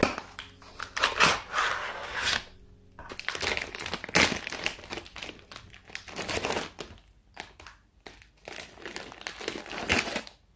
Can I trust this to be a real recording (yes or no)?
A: yes